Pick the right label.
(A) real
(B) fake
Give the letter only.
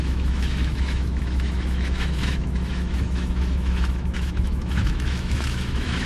B